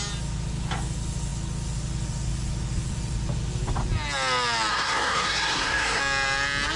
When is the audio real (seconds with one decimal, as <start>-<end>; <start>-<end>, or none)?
0.0-4.7; 6.0-6.8